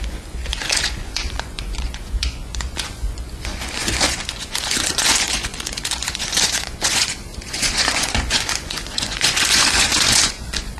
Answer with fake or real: fake